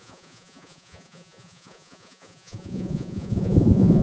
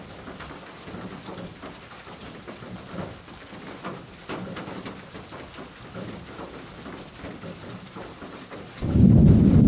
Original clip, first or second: second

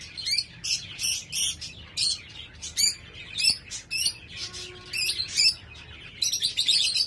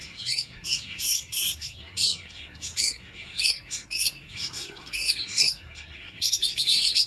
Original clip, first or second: first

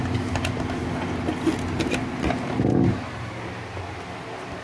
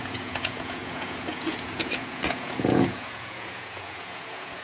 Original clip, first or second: first